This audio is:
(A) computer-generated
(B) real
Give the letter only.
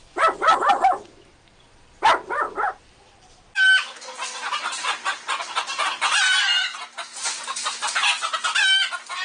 B